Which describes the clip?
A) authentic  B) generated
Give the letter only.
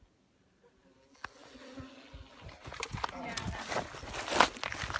A